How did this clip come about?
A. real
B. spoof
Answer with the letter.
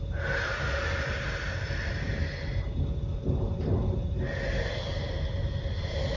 A